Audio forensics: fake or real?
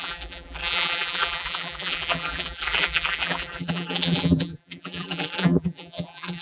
fake